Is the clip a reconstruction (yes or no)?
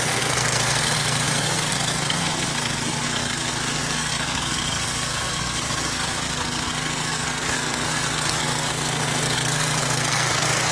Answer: yes